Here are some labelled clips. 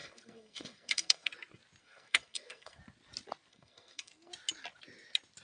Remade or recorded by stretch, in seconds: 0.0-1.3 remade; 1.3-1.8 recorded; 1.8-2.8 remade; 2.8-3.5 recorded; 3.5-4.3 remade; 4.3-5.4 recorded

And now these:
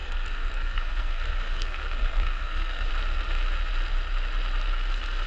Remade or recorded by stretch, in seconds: 0.0-2.9 remade; 2.9-5.3 recorded

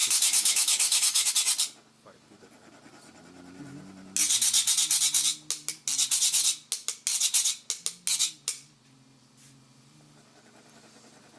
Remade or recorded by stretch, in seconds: 0.0-1.3 remade; 1.3-11.4 recorded

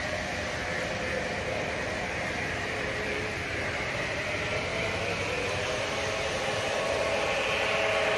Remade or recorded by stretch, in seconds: 0.0-4.7 remade; 4.7-5.6 recorded; 5.6-8.2 remade